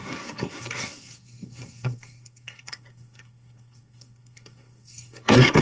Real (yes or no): no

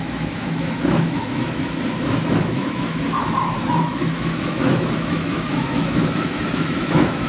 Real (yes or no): no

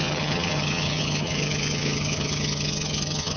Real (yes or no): no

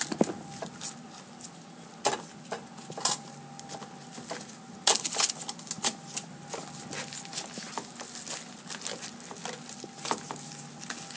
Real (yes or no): yes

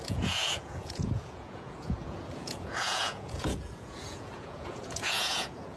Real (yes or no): no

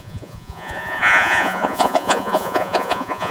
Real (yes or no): no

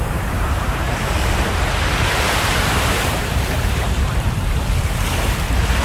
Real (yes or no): no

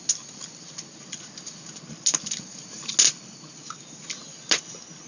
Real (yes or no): yes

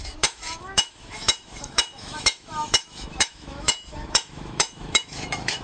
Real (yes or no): no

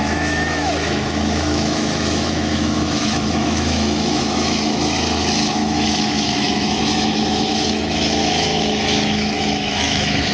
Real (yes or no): no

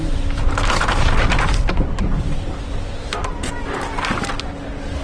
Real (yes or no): yes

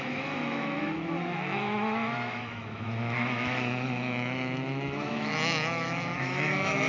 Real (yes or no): no